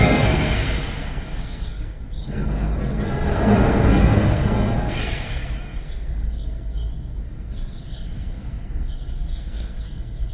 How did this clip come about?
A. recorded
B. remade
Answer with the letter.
B